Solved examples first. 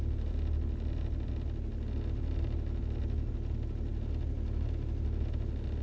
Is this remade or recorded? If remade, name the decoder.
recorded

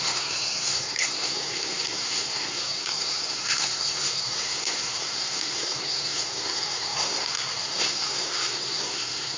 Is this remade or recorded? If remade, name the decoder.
remade, codec, SNAC